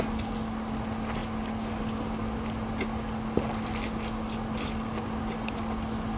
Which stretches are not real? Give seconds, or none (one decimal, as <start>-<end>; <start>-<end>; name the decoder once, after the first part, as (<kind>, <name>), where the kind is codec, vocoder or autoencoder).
none